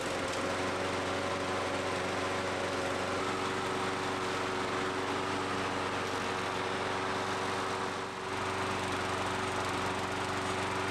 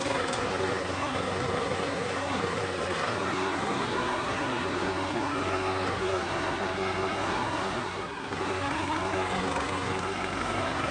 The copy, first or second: second